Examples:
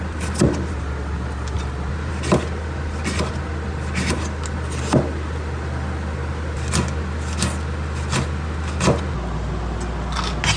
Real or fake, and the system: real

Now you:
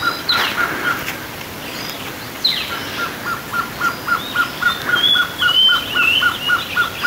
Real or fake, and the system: real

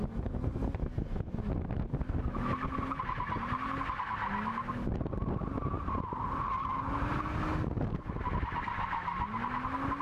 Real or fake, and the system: real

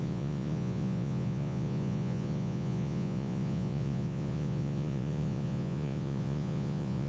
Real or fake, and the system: fake, vocoder, Vocos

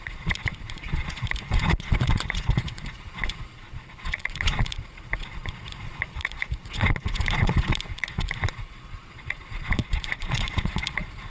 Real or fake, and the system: fake, vocoder, Vocos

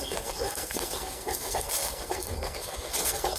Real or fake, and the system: fake, codec, SNAC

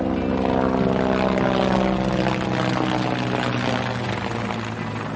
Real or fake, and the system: real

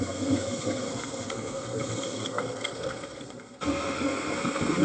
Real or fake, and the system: fake, codec, SNAC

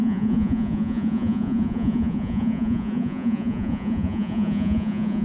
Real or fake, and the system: fake, vocoder, Vocos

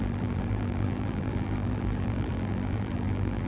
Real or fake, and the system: fake, vocoder, BigVGAN v2